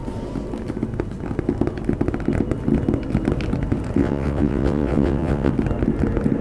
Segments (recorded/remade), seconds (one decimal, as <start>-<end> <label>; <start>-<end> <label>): 0.0-4.0 recorded; 4.0-5.5 remade; 5.5-6.4 recorded